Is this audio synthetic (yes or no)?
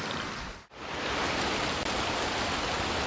no